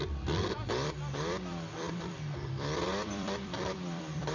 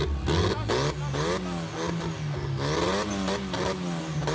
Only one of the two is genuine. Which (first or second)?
second